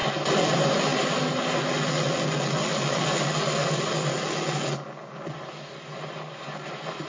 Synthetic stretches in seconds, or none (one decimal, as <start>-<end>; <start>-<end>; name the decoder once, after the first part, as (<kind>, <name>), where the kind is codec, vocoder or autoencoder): none